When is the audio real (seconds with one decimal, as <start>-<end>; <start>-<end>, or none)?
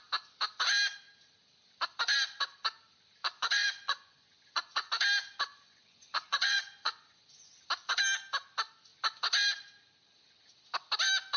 0.0-3.2; 4.9-5.5; 7.5-11.4